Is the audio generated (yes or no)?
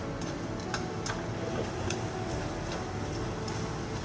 no